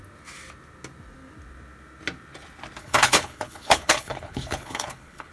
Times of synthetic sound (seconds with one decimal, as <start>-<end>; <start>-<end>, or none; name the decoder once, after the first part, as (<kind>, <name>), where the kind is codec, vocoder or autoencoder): 2.8-5.3 (codec, HILCodec)